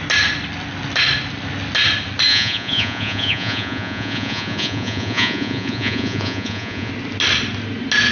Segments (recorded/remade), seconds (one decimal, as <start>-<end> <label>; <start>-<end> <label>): 0.0-2.3 recorded; 2.3-6.9 remade; 6.9-8.1 recorded

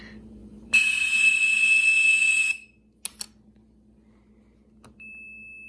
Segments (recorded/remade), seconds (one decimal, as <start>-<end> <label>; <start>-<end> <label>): 0.0-0.4 recorded; 0.4-1.2 remade; 1.2-5.7 recorded

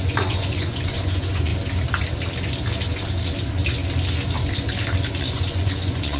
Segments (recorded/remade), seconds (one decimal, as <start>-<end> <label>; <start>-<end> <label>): 0.0-1.5 remade; 1.5-5.2 recorded; 5.2-6.2 remade

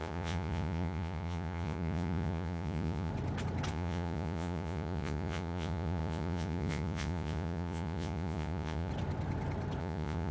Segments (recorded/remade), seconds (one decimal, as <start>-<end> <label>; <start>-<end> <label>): 0.0-3.1 remade; 3.1-3.7 recorded; 3.7-8.9 remade; 8.9-9.8 recorded; 9.8-10.3 remade

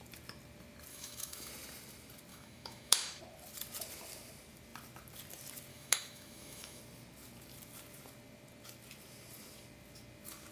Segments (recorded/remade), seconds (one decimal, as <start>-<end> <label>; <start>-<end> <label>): 0.0-0.9 recorded; 0.9-1.5 remade; 1.5-2.3 recorded; 2.3-3.2 remade; 3.2-5.7 recorded; 5.7-6.8 remade; 6.8-10.5 recorded